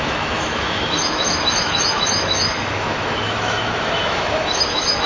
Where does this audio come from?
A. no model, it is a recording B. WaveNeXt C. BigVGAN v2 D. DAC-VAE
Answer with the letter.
D